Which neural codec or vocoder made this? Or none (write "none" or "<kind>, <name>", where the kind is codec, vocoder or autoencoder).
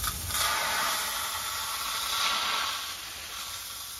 none